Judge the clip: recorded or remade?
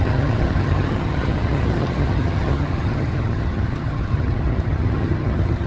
remade